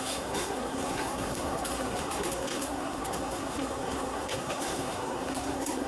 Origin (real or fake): fake